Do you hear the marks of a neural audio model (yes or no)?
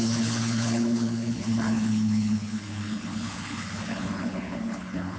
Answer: yes